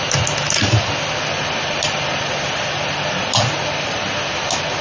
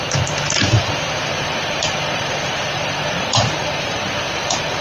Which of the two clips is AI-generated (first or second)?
second